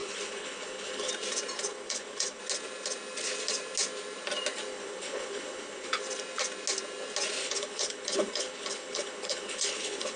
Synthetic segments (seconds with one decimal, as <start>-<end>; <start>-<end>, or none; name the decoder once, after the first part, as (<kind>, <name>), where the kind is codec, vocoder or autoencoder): 0.0-1.1 (codec, HILCodec); 1.7-2.4; 4.7-6.0; 7.4-10.2